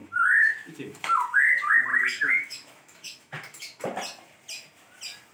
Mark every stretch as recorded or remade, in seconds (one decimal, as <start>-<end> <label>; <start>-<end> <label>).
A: 0.0-1.4 remade; 1.4-1.9 recorded; 1.9-3.8 remade; 3.8-5.3 recorded